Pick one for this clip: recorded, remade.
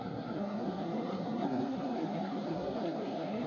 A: remade